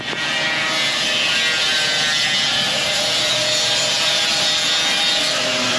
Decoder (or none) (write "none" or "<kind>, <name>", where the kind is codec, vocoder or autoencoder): none